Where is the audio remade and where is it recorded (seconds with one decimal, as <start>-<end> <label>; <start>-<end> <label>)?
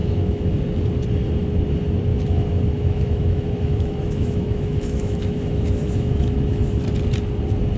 0.0-0.6 remade; 0.6-2.1 recorded; 2.1-6.8 remade; 6.8-7.8 recorded